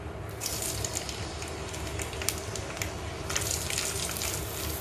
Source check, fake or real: real